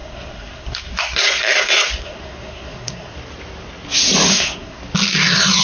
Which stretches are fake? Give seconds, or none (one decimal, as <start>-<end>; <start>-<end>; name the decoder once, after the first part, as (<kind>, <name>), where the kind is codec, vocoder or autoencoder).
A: 0.0-3.1 (codec, SNAC); 4.3-4.8